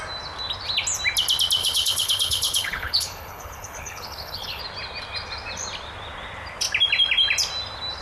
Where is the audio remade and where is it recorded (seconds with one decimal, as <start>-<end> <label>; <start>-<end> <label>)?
0.0-1.6 recorded; 1.6-4.6 remade; 4.6-8.0 recorded